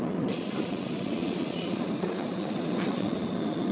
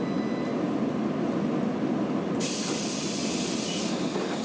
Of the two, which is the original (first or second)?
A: second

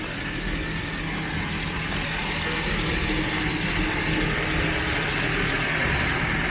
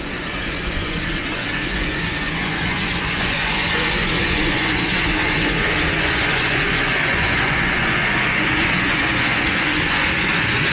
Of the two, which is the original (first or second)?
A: first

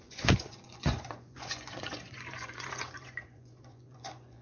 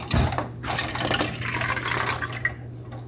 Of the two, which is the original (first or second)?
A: second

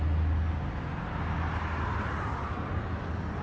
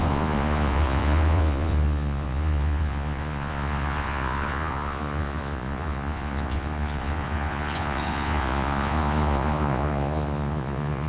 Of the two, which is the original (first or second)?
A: first